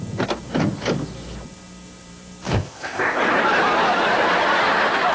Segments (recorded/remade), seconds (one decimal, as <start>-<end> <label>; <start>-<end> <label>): 0.0-2.5 recorded; 2.5-3.2 remade; 3.2-5.1 recorded